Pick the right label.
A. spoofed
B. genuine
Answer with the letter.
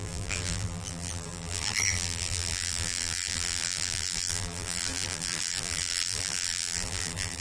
A